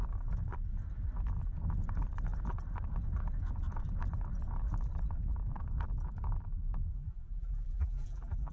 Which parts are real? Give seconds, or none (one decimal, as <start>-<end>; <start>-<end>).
0.0-7.0